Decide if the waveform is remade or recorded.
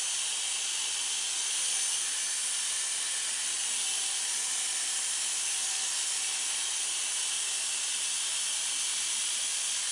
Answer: recorded